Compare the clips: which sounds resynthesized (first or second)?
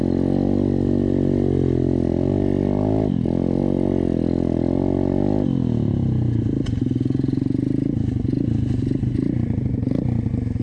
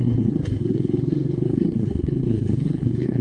second